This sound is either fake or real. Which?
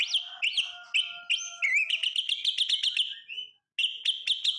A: real